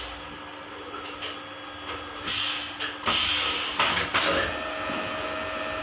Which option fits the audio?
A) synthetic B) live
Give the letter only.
B